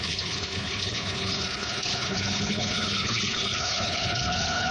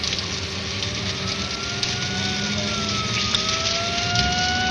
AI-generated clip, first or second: first